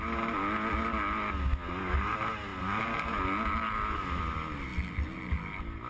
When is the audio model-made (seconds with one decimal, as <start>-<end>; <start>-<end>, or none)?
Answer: none